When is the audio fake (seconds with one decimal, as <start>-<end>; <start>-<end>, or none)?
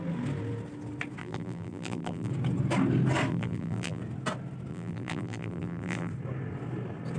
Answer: 1.2-2.3; 3.3-4.0; 4.7-6.1